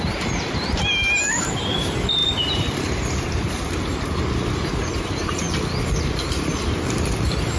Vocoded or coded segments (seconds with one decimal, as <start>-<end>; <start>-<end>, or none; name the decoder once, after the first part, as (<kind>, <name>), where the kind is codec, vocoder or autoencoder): 2.2-5.6 (vocoder, BigVGAN v2)